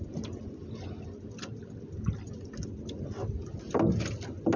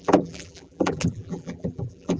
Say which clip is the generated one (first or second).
second